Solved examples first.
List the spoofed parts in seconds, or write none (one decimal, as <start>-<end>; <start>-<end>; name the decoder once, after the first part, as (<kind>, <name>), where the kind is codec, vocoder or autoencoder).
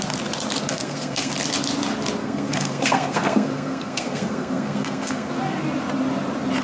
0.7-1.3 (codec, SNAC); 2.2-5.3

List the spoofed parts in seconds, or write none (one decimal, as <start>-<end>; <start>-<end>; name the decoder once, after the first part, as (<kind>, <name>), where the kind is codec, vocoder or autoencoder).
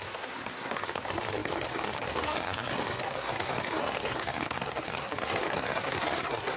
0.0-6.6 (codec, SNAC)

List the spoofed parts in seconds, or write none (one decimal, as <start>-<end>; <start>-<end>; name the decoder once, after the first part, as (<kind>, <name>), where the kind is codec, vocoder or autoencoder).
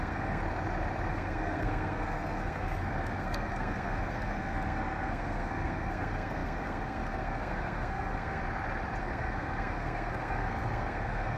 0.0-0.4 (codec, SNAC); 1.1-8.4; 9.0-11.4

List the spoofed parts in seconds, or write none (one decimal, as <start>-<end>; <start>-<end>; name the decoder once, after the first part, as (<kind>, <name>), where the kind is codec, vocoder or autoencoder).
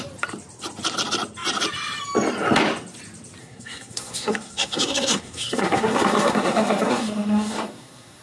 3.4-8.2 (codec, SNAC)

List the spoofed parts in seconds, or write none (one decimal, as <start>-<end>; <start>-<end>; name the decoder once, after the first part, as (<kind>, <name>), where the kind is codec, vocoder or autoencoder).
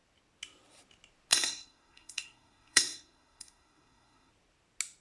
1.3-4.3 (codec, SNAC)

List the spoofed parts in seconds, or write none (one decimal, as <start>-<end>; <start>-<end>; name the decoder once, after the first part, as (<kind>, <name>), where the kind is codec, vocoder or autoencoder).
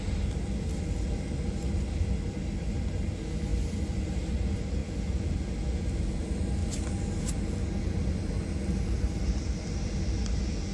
none